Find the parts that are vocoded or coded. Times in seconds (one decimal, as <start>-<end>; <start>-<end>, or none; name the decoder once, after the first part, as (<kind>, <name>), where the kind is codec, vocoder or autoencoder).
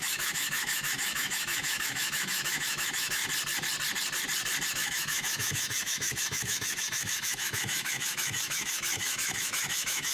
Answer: 0.0-3.2 (autoencoder, DAC-VAE); 4.7-10.1